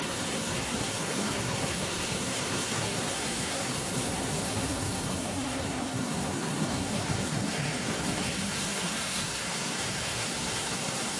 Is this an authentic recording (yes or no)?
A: no